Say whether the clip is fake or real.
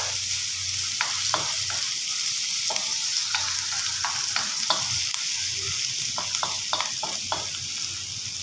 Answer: real